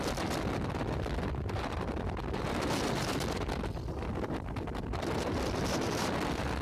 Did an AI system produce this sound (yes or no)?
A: no